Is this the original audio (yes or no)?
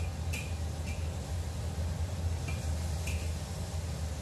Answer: yes